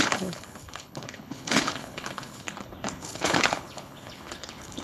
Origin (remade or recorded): remade